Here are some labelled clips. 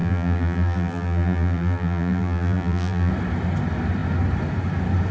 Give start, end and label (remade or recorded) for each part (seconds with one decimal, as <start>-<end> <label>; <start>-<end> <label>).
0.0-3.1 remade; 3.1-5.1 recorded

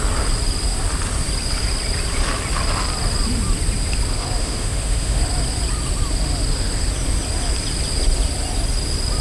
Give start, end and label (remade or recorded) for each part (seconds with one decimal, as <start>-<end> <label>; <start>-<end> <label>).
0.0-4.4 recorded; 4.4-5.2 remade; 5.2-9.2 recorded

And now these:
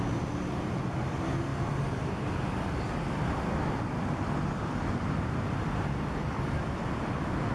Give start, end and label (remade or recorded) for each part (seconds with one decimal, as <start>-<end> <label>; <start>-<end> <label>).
0.0-7.5 recorded

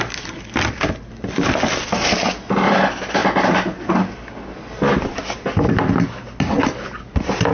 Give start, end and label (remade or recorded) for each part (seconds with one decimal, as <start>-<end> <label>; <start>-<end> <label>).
0.0-7.5 recorded

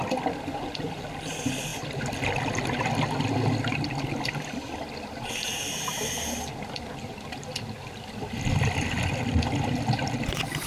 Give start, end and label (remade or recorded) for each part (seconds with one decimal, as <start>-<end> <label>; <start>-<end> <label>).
0.0-10.7 recorded

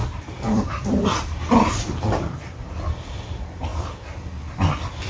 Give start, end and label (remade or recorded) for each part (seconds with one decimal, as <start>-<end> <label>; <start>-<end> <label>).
0.0-3.7 remade; 3.7-5.1 recorded

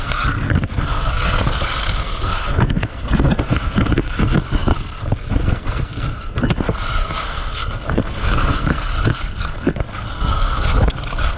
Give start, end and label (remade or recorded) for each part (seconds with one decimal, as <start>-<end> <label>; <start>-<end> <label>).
0.0-11.4 remade